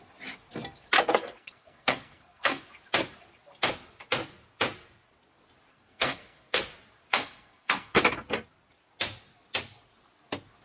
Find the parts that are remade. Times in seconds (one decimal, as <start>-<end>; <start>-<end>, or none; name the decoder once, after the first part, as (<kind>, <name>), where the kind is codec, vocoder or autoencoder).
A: 1.2-2.7 (codec, SNAC); 5.7-6.6; 7.1-8.0